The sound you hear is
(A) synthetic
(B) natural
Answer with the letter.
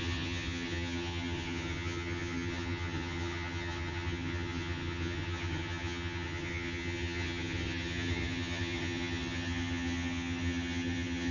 A